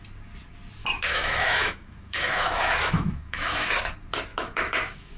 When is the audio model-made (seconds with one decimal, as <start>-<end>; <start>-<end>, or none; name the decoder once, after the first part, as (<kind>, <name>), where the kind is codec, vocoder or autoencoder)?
0.8-3.9 (autoencoder, DAC-VAE); 4.3-5.2

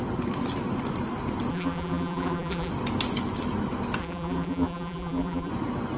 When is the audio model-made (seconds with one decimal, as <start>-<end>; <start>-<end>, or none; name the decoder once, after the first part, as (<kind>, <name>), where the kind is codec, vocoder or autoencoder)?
1.5-2.7 (vocoder, BigVGAN v2); 4.0-5.5

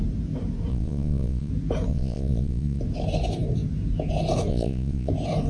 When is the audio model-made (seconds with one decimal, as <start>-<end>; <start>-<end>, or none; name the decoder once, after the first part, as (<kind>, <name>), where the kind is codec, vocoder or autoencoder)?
0.7-1.5 (vocoder, Vocos); 1.9-2.8; 4.5-5.1